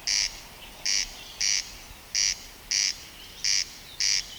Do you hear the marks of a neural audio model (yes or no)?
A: no